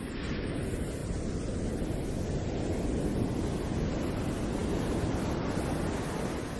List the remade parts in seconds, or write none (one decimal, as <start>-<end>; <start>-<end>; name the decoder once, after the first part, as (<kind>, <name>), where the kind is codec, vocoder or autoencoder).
none

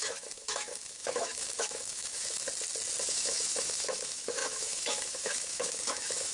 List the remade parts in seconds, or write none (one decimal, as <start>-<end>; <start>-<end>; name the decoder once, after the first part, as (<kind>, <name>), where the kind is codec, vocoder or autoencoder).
0.0-2.4 (autoencoder, DAC-VAE); 3.1-6.3

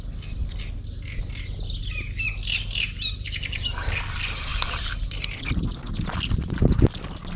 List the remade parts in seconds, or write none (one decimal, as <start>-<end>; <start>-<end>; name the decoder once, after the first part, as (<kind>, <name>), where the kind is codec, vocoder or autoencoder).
4.5-5.0 (vocoder, BigVGAN v2)

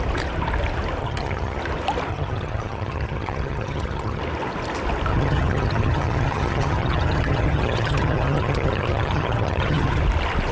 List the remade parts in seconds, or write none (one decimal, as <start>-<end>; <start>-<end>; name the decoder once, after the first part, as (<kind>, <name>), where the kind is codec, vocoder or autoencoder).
1.0-1.6 (vocoder, HiFi-GAN); 2.1-4.2; 5.1-10.0

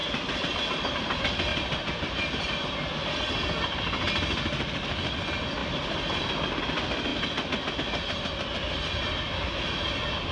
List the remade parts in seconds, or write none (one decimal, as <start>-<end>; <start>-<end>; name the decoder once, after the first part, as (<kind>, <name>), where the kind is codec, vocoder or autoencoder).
5.6-6.6 (vocoder, BigVGAN v2)

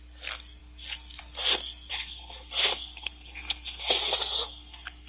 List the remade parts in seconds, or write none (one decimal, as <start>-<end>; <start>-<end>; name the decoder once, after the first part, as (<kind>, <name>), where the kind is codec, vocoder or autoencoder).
1.9-5.1 (codec, SNAC)

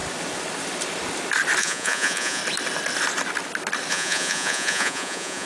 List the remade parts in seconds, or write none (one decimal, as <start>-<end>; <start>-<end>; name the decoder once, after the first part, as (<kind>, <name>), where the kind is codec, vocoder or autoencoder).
1.6-2.4 (vocoder, Vocos); 3.9-5.5